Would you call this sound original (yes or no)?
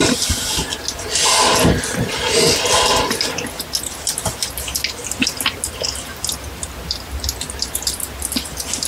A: yes